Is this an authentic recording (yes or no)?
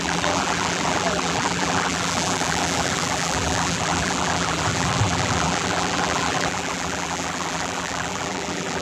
no